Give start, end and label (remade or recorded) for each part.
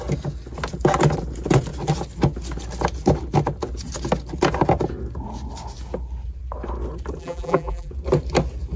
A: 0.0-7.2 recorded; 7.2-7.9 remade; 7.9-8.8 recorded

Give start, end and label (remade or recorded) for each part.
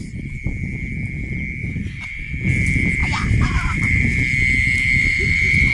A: 0.0-1.6 recorded; 1.6-2.3 remade; 2.3-3.0 recorded; 3.0-4.0 remade; 4.0-5.0 recorded; 5.0-5.7 remade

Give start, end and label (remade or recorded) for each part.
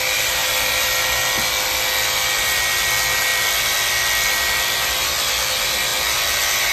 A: 0.0-6.7 recorded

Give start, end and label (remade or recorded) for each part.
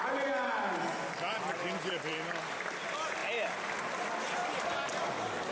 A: 0.0-2.1 recorded; 2.1-2.8 remade; 2.8-3.2 recorded; 3.2-5.0 remade; 5.0-5.5 recorded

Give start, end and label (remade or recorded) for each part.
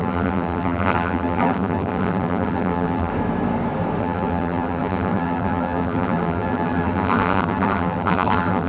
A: 0.0-3.1 remade; 3.1-4.0 recorded; 4.0-8.7 remade